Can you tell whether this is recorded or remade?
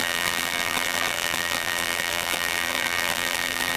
remade